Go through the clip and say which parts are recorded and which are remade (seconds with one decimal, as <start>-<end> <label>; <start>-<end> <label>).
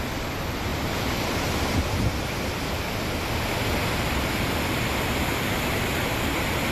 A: 0.0-6.7 recorded